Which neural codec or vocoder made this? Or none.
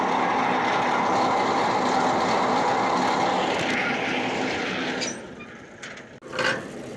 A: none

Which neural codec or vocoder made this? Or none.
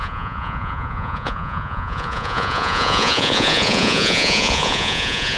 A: vocoder, Vocos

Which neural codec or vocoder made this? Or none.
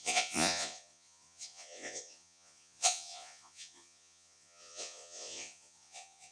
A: vocoder, Vocos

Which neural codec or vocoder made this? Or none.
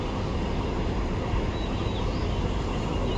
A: none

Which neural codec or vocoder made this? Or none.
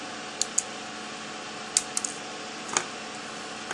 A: none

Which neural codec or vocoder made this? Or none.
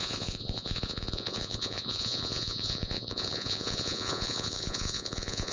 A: vocoder, Vocos